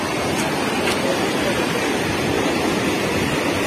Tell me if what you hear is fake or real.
real